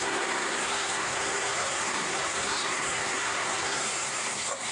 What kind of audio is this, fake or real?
fake